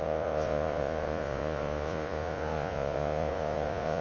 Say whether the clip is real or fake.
fake